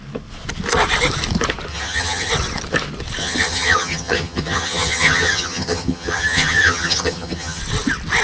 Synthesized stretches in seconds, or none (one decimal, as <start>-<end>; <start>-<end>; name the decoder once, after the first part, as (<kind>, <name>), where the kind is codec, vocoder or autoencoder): 1.7-2.3 (vocoder, HiFi-GAN); 3.2-7.6